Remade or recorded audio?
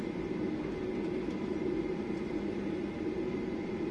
recorded